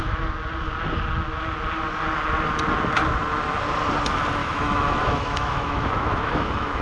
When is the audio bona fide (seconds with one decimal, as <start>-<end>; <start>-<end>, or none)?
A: 0.0-4.4